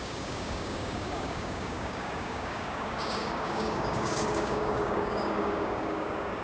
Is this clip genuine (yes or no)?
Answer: no